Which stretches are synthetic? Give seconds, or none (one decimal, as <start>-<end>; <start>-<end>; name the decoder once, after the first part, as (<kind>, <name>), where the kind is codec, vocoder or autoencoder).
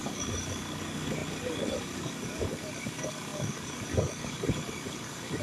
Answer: 0.0-5.4 (codec, DAC)